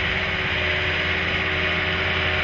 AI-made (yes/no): no